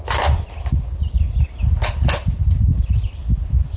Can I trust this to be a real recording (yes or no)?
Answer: yes